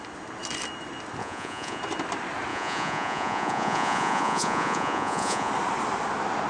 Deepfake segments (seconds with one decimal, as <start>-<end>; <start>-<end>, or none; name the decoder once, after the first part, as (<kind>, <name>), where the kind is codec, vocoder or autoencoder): 1.2-1.8 (vocoder, Vocos); 2.5-5.5